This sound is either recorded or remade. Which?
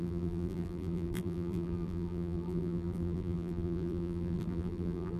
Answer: remade